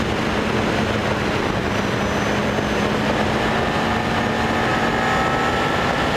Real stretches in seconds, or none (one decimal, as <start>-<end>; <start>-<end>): 0.0-6.2